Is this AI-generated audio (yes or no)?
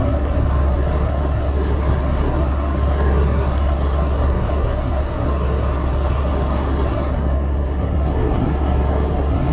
yes